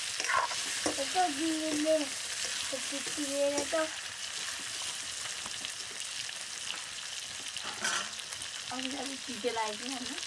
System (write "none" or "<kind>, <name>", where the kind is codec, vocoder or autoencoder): none